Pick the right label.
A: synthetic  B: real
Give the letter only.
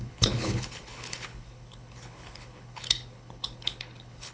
A